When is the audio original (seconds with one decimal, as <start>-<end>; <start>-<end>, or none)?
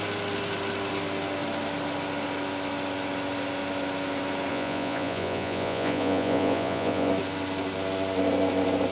0.0-4.5; 7.1-8.9